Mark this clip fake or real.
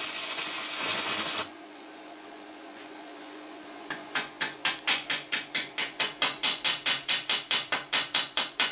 fake